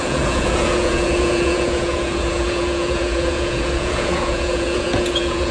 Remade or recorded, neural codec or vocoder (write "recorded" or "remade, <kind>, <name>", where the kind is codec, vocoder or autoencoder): remade, vocoder, Vocos